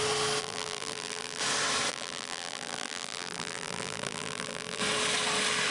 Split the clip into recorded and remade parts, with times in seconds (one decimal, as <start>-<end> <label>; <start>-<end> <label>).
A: 0.0-0.4 recorded; 0.4-1.4 remade; 1.4-1.9 recorded; 1.9-4.8 remade; 4.8-5.7 recorded